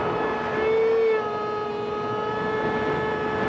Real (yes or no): yes